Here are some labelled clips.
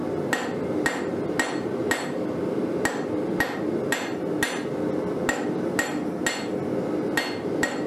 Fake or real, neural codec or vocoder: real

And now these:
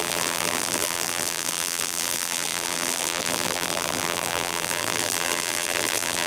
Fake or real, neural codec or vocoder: fake, vocoder, BigVGAN v2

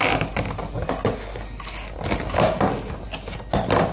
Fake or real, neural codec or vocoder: real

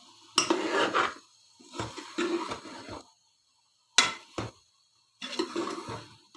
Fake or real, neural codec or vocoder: real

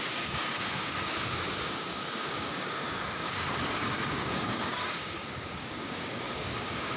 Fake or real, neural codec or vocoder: fake, codec, DAC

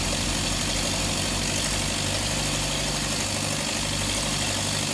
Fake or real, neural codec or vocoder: real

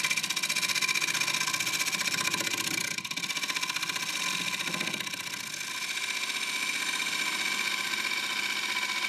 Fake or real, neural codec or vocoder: real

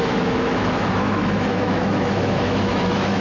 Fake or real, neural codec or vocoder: fake, autoencoder, DAC-VAE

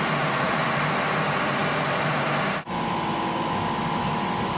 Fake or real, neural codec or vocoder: real